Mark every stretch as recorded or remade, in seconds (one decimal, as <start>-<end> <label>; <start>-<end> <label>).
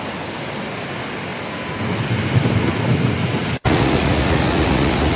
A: 0.0-3.4 recorded; 3.4-5.2 remade